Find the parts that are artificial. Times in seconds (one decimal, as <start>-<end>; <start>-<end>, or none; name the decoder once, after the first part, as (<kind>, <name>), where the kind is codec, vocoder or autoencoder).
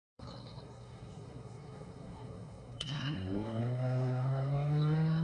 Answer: 0.0-5.2 (codec, SNAC)